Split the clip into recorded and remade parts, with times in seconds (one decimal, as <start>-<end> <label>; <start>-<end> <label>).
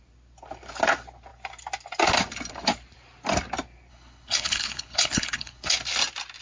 0.0-3.9 recorded; 3.9-5.7 remade; 5.7-6.4 recorded